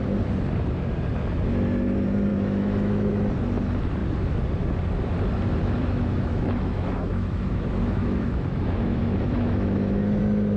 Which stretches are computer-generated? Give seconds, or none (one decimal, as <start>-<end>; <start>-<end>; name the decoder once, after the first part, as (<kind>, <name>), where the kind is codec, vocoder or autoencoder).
2.3-3.3 (autoencoder, DAC-VAE); 5.6-10.2